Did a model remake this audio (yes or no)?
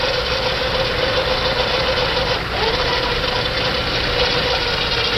no